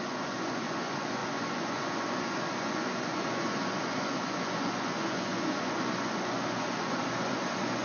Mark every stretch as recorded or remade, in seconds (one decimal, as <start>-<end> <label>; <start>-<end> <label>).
0.0-7.8 remade